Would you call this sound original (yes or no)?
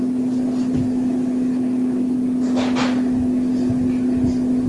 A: yes